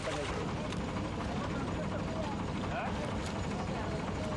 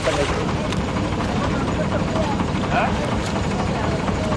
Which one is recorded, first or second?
first